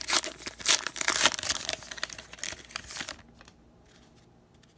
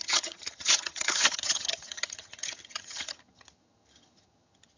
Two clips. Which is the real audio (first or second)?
first